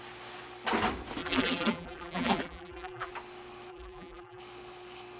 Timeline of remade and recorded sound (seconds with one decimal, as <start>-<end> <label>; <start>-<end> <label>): 0.0-1.2 recorded; 1.2-3.1 remade; 3.1-3.7 recorded; 3.7-4.4 remade; 4.4-5.2 recorded